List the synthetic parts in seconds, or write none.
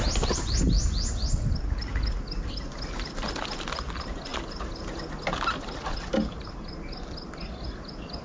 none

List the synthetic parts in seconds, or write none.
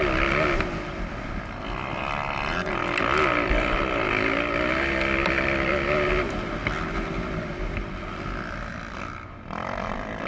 5.2-6.1 (vocoder, BigVGAN v2); 8.7-10.3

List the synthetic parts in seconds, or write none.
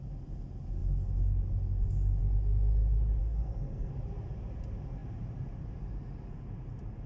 3.2-3.9 (codec, SNAC)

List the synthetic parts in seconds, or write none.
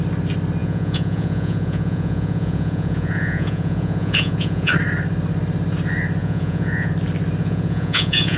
0.6-4.7 (vocoder, Vocos); 6.2-6.9; 7.4-8.4